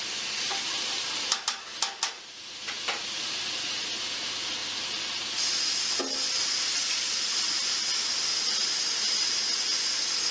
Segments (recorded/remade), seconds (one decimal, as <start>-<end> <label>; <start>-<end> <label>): 0.0-10.3 recorded